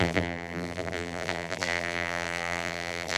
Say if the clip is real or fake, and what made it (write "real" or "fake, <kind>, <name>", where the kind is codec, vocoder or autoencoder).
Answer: fake, vocoder, BigVGAN v2